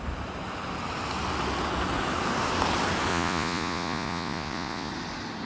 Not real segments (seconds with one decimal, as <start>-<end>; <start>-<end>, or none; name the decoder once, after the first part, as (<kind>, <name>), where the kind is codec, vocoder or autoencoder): 3.1-4.9 (vocoder, Vocos)